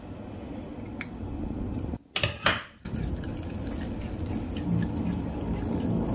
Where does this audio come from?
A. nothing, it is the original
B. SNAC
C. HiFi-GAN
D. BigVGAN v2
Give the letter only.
A